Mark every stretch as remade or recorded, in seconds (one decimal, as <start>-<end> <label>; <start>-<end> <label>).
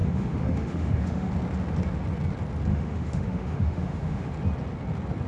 0.0-1.3 remade; 1.3-2.7 recorded; 2.7-4.3 remade; 4.3-5.3 recorded